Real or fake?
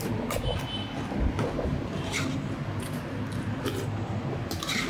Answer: real